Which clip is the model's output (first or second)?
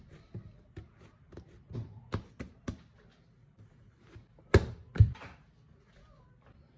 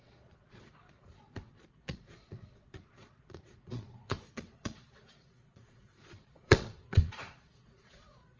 second